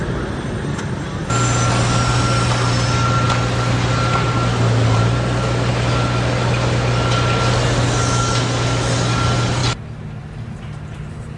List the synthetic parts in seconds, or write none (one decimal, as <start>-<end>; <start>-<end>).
none